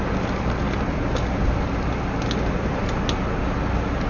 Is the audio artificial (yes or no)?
no